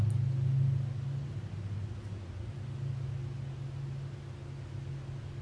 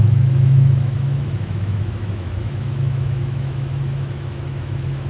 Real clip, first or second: first